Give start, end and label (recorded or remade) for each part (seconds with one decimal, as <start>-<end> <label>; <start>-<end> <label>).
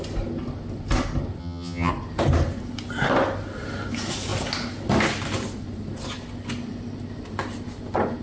0.0-1.4 recorded; 1.4-1.9 remade; 1.9-8.2 recorded